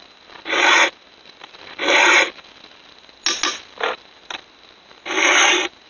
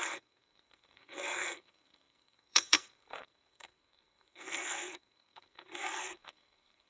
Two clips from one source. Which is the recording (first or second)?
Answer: first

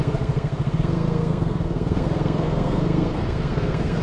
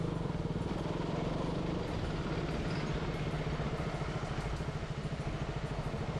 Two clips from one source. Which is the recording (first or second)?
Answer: second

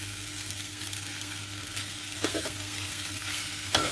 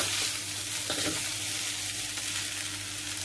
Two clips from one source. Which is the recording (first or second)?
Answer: second